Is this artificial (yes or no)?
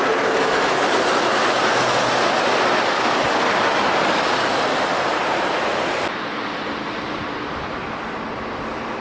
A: no